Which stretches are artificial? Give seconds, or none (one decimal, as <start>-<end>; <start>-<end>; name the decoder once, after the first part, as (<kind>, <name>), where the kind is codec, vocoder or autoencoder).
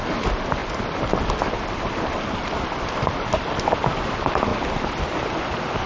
none